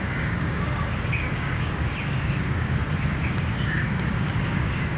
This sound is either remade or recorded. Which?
remade